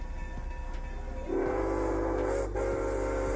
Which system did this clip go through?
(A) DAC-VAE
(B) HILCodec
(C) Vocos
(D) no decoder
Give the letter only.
D